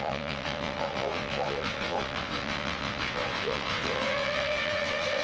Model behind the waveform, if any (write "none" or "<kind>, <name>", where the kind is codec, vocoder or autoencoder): vocoder, WaveNeXt